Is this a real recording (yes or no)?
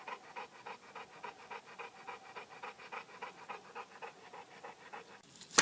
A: yes